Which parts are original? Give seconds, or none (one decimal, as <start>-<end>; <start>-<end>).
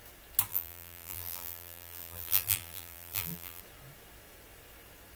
0.0-0.5; 3.6-5.2